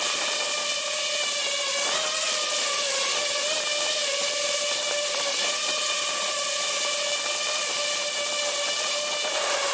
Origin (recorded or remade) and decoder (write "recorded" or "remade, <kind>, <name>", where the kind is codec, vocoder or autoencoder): remade, vocoder, BigVGAN v2